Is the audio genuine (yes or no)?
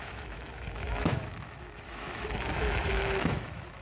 no